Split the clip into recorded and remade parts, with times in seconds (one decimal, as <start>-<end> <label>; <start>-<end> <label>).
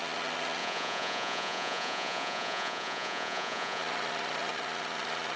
0.0-0.6 recorded; 0.6-3.8 remade; 3.8-5.4 recorded